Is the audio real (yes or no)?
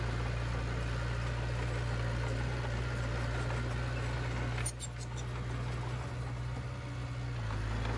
yes